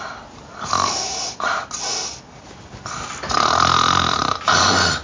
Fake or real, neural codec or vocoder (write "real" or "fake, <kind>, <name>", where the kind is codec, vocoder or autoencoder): real